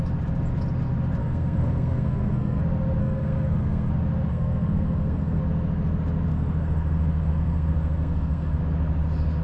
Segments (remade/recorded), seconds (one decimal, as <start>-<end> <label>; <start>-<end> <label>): 0.0-1.2 recorded; 1.2-2.6 remade; 2.6-3.0 recorded; 3.0-3.9 remade; 3.9-4.3 recorded; 4.3-5.4 remade; 5.4-6.3 recorded; 6.3-8.6 remade; 8.6-9.4 recorded